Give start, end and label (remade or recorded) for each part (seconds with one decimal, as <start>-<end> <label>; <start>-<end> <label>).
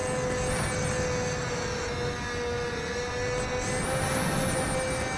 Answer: 0.0-5.2 recorded